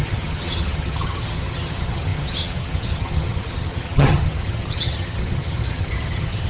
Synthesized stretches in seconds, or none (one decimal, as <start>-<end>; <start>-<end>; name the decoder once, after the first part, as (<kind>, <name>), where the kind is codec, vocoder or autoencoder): 0.0-6.5 (vocoder, HiFi-GAN)